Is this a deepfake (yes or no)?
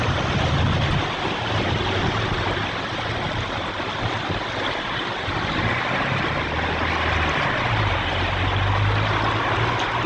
no